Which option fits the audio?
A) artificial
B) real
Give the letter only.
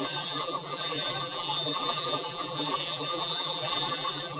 A